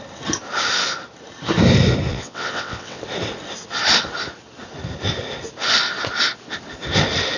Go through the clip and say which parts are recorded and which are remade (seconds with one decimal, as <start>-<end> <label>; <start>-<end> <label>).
0.0-2.1 recorded; 2.1-3.0 remade; 3.0-7.4 recorded